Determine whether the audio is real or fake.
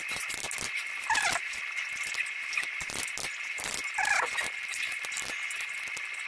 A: real